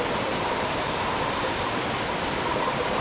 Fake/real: real